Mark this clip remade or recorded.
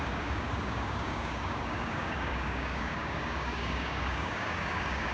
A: remade